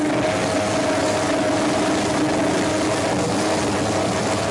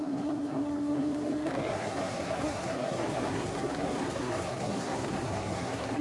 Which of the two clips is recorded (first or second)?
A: first